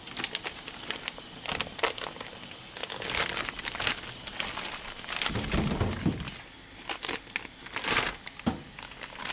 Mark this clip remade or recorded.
recorded